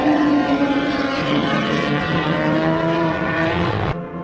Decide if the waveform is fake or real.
fake